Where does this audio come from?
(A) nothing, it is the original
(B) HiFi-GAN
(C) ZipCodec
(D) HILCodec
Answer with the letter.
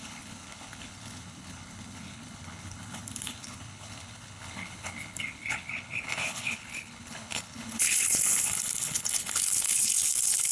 D